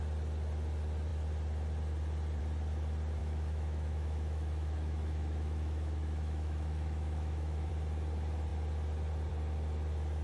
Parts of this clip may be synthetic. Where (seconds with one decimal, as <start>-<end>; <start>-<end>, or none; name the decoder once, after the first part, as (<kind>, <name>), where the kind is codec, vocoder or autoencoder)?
3.2-7.7 (autoencoder, DAC-VAE)